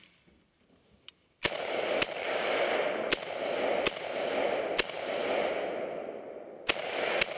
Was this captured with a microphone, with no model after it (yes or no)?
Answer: yes